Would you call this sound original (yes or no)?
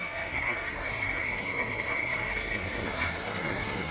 no